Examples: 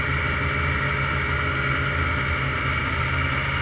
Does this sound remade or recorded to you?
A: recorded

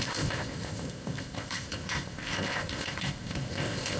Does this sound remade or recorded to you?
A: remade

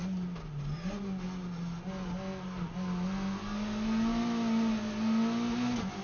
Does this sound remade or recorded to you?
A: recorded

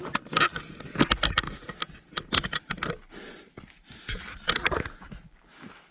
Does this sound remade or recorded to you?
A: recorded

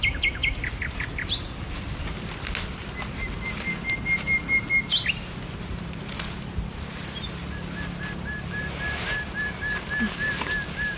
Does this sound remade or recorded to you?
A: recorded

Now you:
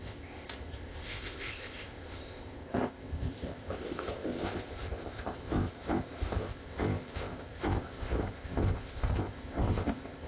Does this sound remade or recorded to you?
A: remade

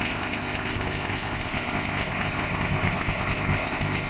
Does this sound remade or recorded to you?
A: remade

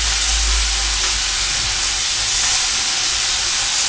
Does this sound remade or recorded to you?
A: recorded